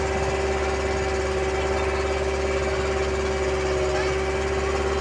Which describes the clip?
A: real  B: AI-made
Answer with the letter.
A